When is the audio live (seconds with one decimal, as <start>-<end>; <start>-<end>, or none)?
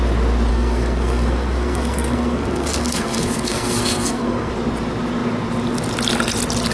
0.0-0.5; 4.5-6.7